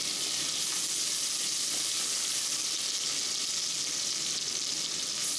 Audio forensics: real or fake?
real